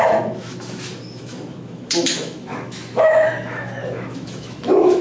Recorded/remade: remade